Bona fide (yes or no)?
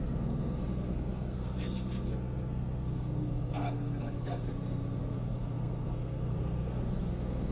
no